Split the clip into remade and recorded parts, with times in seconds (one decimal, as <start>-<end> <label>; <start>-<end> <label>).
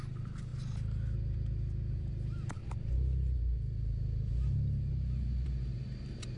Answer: 0.0-0.5 remade; 0.5-2.1 recorded; 2.1-6.4 remade